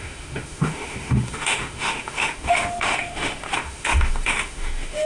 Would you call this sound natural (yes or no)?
no